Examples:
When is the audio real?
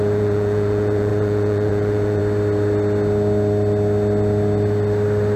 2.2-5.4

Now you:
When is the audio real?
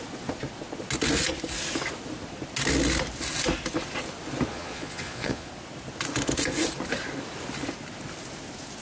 0.0-4.5; 5.5-8.8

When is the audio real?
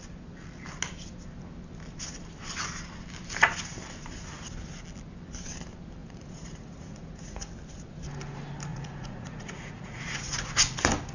0.0-6.0; 7.5-8.7; 10.5-11.1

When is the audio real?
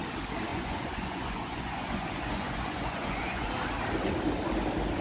0.0-0.5; 3.5-5.0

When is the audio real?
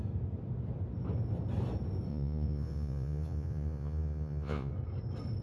0.0-2.1; 4.7-5.4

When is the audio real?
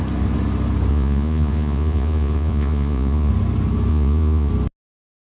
0.0-0.9; 3.3-3.9; 4.5-5.3